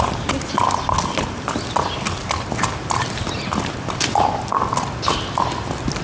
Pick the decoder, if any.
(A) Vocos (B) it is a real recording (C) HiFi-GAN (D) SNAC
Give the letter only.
B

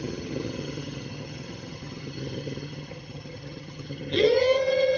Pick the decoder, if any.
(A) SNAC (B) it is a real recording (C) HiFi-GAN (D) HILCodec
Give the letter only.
C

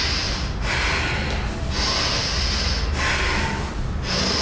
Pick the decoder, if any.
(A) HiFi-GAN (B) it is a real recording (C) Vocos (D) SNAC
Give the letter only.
B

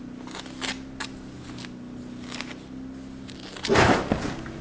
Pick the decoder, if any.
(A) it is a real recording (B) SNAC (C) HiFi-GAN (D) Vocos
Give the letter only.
A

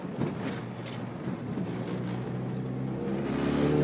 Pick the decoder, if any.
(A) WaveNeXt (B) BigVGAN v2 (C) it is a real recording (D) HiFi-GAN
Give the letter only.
C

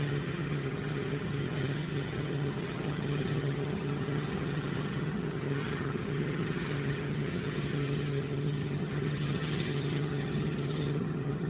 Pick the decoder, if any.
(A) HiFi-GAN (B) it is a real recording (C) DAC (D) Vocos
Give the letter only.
A